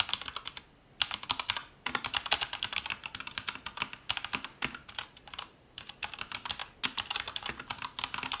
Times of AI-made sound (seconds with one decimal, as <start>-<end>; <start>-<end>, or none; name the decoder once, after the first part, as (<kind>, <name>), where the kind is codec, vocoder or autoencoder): 1.6-3.1 (vocoder, BigVGAN v2); 4.8-5.9